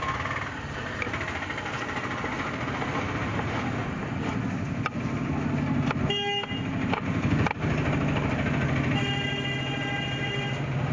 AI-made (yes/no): no